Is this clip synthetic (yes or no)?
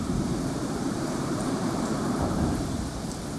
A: yes